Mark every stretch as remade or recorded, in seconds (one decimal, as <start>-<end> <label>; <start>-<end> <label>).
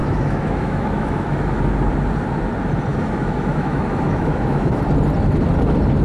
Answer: 0.0-1.6 remade; 1.6-2.9 recorded; 2.9-4.8 remade; 4.8-6.0 recorded